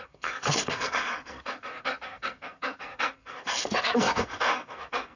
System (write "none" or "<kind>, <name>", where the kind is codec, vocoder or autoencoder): codec, SNAC